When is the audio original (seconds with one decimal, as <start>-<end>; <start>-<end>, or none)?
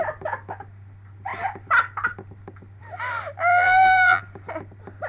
0.0-3.5; 4.2-5.1